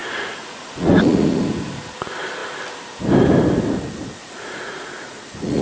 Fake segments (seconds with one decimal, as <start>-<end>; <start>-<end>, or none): 0.0-1.4; 4.2-5.6